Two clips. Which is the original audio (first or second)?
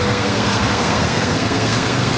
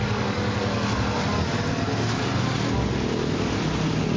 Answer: second